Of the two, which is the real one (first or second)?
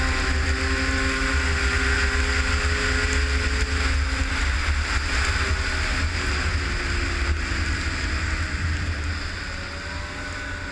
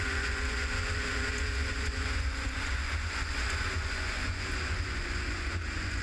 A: first